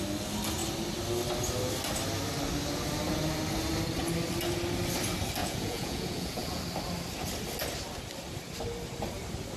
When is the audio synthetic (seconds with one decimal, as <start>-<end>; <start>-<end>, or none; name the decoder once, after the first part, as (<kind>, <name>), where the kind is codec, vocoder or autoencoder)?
5.4-6.6 (vocoder, Vocos)